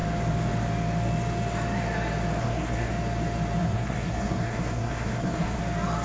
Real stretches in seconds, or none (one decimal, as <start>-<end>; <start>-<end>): 0.0-2.4; 2.9-3.6; 5.6-6.0